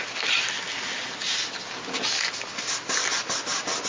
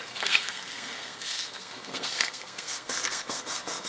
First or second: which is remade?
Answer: second